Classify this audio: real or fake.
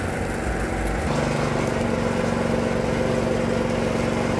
real